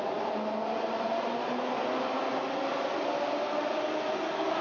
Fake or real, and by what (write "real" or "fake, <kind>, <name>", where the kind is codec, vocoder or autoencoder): real